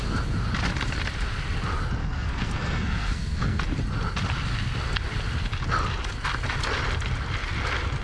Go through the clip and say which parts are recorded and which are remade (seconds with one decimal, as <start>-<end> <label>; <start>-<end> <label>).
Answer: 0.0-2.0 recorded; 2.0-3.6 remade; 3.6-8.0 recorded